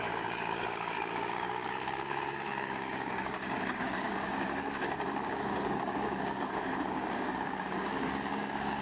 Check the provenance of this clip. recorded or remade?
remade